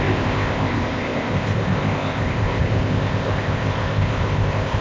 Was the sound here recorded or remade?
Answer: remade